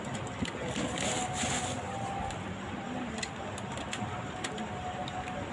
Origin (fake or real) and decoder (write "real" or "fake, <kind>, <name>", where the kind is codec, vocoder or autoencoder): real